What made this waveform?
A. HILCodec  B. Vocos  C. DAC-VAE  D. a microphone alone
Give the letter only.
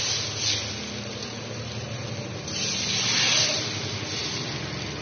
D